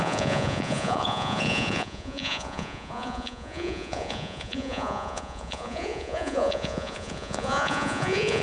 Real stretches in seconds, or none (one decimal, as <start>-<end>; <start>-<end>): none